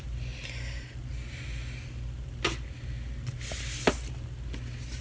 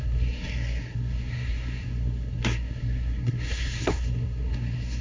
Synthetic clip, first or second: second